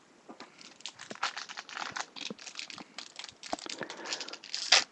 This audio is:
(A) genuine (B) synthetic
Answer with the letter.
A